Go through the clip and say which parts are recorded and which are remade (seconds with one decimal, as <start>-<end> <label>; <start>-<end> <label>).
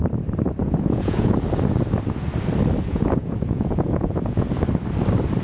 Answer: 0.0-0.6 recorded; 0.6-1.3 remade; 1.3-2.9 recorded; 2.9-4.5 remade; 4.5-5.4 recorded